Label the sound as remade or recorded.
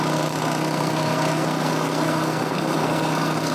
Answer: remade